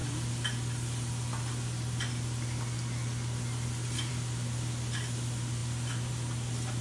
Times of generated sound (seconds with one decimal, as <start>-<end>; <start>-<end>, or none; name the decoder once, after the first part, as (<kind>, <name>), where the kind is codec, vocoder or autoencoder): none